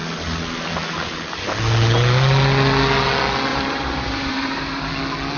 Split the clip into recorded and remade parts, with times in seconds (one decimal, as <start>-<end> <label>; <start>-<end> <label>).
0.0-3.5 recorded; 3.5-4.9 remade; 4.9-5.4 recorded